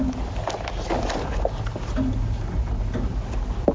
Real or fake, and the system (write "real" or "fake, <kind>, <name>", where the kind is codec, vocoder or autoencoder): real